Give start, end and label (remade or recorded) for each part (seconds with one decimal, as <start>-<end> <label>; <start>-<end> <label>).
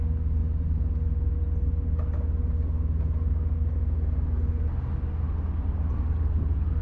0.0-6.8 recorded